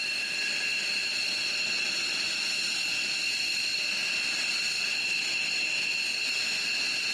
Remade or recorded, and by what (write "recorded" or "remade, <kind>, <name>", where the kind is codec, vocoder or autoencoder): recorded